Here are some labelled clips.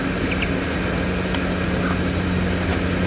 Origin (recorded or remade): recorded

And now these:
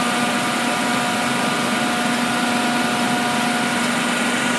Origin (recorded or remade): recorded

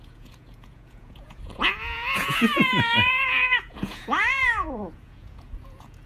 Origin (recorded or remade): remade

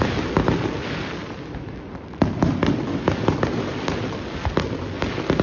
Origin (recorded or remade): recorded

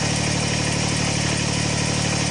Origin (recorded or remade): recorded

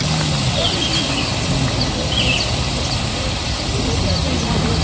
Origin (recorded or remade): recorded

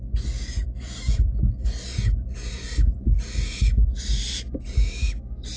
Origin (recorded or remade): recorded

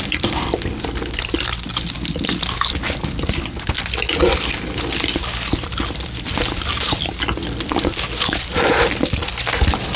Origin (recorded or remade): recorded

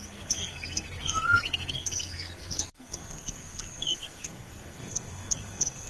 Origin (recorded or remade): remade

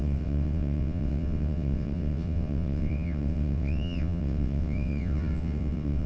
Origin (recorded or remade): remade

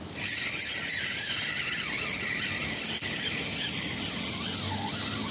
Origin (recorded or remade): recorded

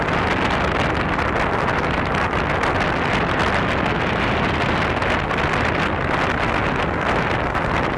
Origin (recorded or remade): recorded